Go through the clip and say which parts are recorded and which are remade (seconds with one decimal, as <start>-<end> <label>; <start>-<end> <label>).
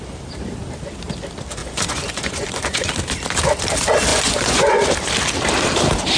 0.0-1.6 recorded; 1.6-2.9 remade; 2.9-4.1 recorded; 4.1-4.8 remade; 4.8-6.2 recorded